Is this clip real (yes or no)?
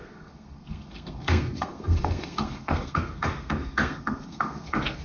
no